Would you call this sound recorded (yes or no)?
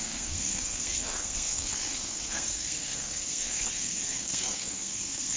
no